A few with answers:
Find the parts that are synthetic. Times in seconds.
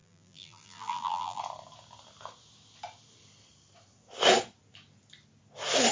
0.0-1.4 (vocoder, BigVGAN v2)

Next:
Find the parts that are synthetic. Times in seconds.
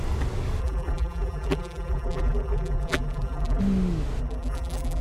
0.6-3.6 (vocoder, BigVGAN v2); 4.2-5.0